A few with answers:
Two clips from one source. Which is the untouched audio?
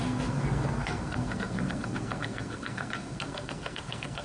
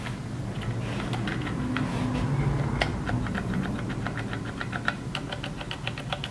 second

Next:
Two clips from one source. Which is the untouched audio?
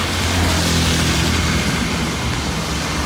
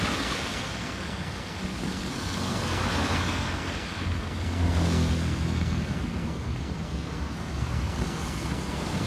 first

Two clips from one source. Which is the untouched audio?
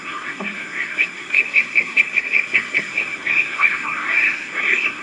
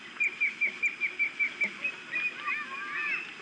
second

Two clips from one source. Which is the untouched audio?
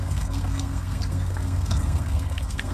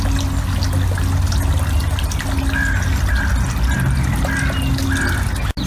second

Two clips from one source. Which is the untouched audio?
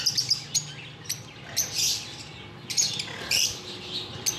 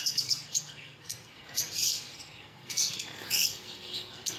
first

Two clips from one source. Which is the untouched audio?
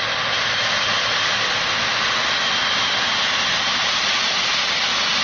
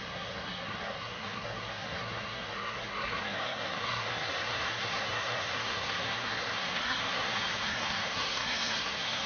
first